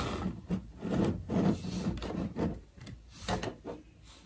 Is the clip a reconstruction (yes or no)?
no